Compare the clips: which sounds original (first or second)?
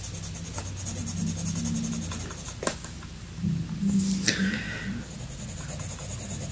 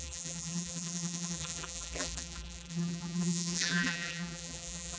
first